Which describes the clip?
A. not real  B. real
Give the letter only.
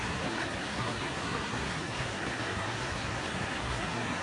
A